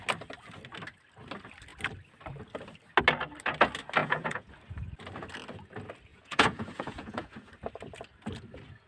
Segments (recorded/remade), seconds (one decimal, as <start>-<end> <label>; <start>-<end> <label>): 0.0-4.0 recorded; 4.0-4.5 remade; 4.5-6.1 recorded; 6.1-7.5 remade; 7.5-8.9 recorded